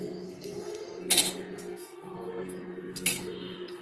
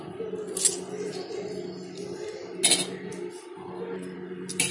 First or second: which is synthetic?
first